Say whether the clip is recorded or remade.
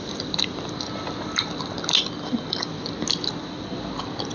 recorded